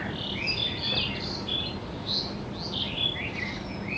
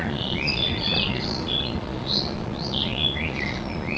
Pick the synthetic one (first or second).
second